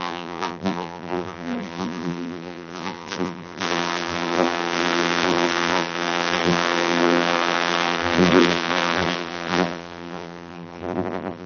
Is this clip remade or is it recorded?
remade